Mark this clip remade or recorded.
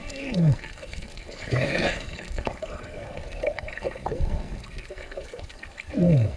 remade